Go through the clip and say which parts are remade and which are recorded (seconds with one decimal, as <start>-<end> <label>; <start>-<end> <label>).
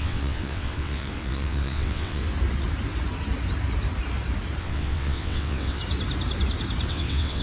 0.0-2.2 remade; 2.2-4.6 recorded; 4.6-5.8 remade; 5.8-6.9 recorded; 6.9-7.4 remade